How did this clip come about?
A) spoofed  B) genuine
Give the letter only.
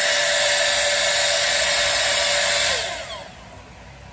B